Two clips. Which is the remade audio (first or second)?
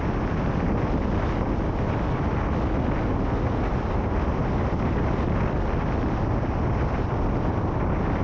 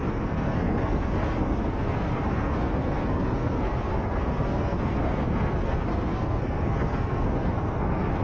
second